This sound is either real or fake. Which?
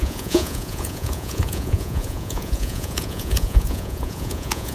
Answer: fake